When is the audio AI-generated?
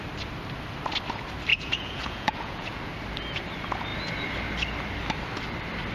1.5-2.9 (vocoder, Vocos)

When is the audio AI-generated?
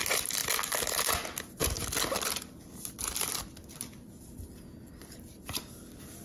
none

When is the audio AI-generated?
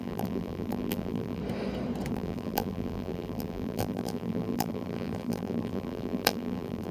0.0-1.4 (vocoder, BigVGAN v2); 2.1-6.9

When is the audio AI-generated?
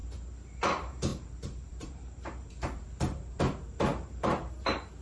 0.7-5.0 (vocoder, BigVGAN v2)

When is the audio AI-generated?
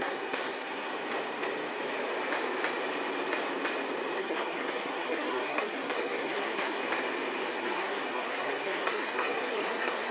0.0-0.9 (codec, SNAC); 4.2-6.9; 7.5-10.1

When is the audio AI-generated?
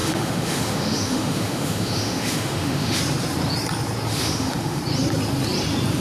0.0-3.0 (autoencoder, DAC-VAE); 4.1-4.8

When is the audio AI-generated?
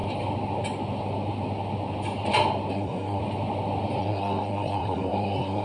2.7-3.2 (codec, SNAC); 4.0-5.6